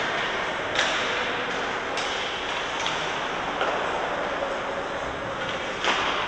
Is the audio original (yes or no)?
yes